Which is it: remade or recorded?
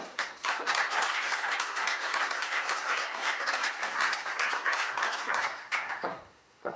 remade